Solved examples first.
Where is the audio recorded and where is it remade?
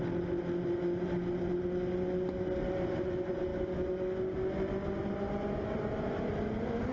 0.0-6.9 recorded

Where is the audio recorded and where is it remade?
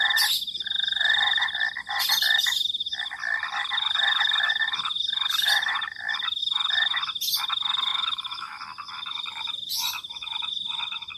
0.0-7.9 recorded; 7.9-8.6 remade; 8.6-11.2 recorded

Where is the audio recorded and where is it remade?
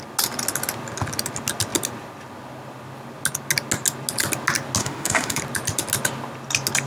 0.0-4.8 recorded; 4.8-5.4 remade; 5.4-6.9 recorded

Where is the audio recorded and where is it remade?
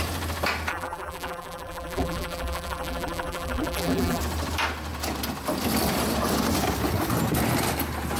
0.0-0.7 recorded; 0.7-4.2 remade; 4.2-8.2 recorded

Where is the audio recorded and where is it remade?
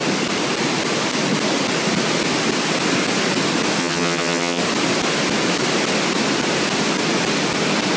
0.0-3.8 recorded; 3.8-4.6 remade; 4.6-8.0 recorded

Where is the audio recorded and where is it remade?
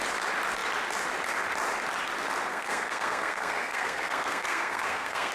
0.0-2.5 recorded; 2.5-5.3 remade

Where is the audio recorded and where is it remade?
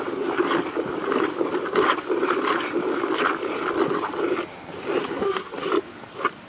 0.0-5.0 recorded; 5.0-5.7 remade; 5.7-6.5 recorded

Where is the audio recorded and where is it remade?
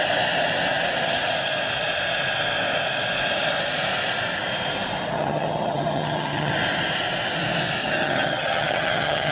0.0-5.1 recorded; 5.1-6.5 remade; 6.5-7.8 recorded; 7.8-9.3 remade